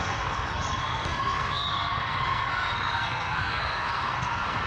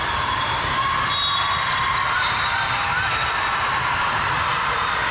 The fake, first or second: first